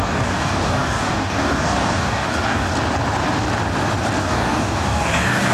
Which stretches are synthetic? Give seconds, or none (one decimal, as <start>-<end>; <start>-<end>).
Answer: 0.0-2.7; 4.2-5.5